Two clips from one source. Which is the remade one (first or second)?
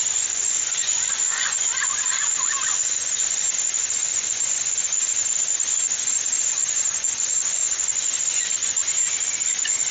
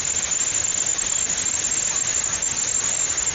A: first